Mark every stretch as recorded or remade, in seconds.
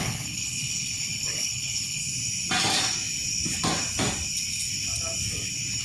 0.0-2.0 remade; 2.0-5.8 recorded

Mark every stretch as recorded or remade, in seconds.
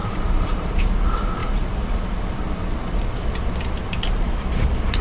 0.0-0.8 remade; 0.8-5.0 recorded